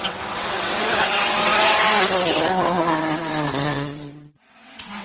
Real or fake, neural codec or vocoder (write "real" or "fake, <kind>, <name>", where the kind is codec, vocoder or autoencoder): fake, vocoder, WaveNeXt